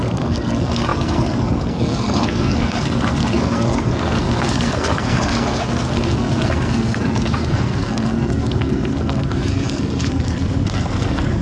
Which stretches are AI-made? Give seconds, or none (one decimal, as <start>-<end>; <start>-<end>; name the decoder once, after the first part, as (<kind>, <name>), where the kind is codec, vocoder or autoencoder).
0.0-11.4 (codec, SNAC)